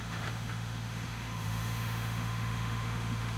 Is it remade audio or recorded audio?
remade